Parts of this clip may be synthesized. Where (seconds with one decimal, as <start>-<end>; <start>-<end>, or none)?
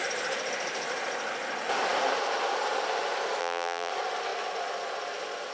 3.4-3.9